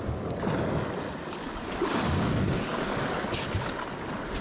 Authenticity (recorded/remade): recorded